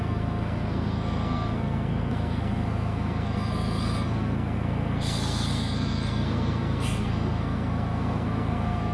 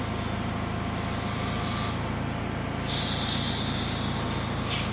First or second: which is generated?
first